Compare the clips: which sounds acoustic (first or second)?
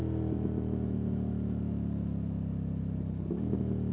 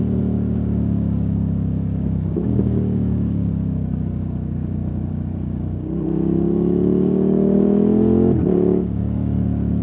first